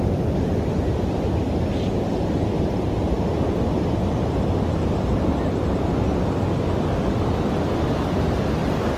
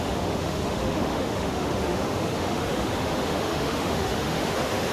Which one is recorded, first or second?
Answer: first